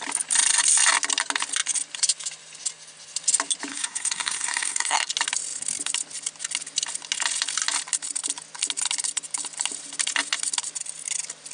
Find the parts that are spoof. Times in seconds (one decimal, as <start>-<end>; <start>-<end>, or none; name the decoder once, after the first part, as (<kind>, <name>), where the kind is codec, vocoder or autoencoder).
3.7-5.1 (codec, SNAC)

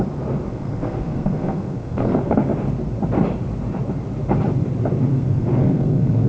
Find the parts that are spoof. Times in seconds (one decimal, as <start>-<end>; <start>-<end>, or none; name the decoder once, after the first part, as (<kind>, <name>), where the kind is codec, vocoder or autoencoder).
0.5-2.5 (codec, SNAC); 5.1-6.3

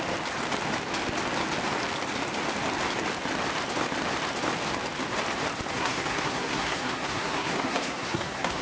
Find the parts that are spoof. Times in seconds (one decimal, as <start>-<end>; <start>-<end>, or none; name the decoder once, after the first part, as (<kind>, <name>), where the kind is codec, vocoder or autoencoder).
5.7-8.6 (codec, SNAC)